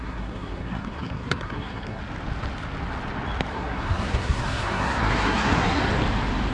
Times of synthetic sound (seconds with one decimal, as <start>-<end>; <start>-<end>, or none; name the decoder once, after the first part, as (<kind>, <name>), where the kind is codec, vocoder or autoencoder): 0.0-2.0 (codec, SNAC); 3.5-5.8